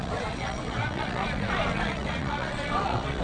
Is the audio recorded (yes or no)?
no